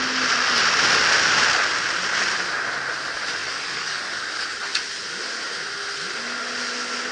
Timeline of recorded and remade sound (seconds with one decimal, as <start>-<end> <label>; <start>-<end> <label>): 0.0-3.4 recorded; 3.4-4.2 remade; 4.2-7.1 recorded